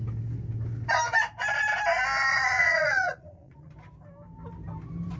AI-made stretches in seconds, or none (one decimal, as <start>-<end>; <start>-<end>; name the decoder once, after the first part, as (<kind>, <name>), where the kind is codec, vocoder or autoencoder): 2.3-3.7 (vocoder, Vocos)